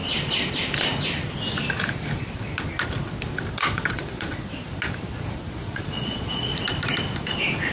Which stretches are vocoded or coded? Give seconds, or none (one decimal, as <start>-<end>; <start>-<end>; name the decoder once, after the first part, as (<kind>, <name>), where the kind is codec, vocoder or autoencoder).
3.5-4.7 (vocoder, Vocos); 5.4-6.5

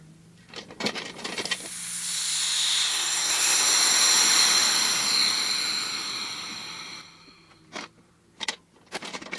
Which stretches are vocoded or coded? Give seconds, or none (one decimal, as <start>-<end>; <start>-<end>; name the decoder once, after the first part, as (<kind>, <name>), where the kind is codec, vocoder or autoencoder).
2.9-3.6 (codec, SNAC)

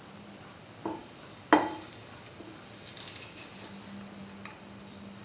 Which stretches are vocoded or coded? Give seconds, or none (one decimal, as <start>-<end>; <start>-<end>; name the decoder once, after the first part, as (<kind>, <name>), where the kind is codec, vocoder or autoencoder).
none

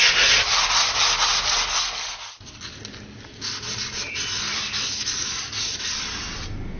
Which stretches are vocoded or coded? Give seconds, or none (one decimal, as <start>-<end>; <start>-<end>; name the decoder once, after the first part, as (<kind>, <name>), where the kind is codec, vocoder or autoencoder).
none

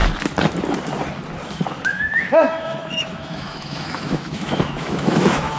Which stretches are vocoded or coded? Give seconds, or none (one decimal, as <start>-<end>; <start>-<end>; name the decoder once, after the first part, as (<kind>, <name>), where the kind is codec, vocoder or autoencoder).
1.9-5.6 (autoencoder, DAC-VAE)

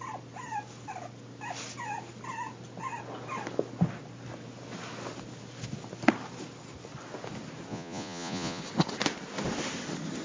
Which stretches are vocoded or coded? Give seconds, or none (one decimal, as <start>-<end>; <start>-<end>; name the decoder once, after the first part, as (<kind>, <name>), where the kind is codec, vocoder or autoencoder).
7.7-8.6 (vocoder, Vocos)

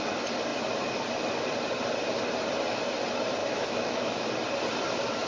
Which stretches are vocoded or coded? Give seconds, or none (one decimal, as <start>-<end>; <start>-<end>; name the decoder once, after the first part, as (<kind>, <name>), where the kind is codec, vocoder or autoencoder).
3.4-4.3 (autoencoder, DAC-VAE)